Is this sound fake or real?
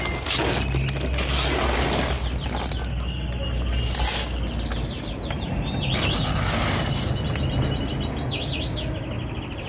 real